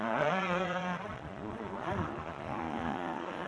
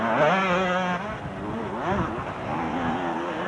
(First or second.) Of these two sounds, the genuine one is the second